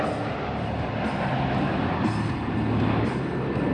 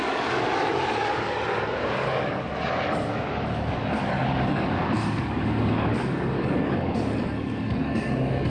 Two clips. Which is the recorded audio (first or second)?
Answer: first